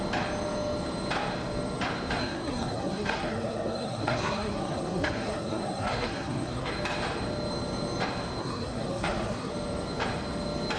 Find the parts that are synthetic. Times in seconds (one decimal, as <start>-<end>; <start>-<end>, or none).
2.2-6.7; 8.4-9.5